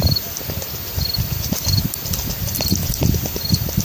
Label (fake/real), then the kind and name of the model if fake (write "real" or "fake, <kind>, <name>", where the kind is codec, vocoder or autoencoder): real